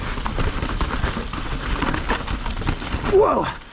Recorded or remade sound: recorded